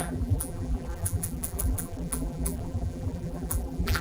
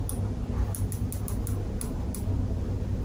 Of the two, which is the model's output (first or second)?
first